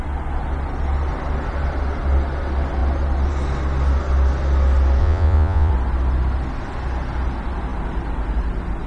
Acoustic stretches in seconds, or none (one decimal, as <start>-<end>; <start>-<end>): 0.0-5.0; 5.7-8.9

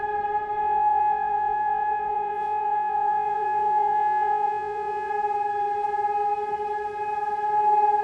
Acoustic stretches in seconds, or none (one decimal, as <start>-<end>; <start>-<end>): 0.0-0.6; 5.1-8.0